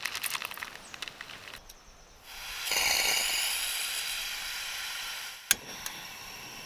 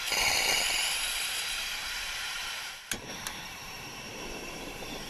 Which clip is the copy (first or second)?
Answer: second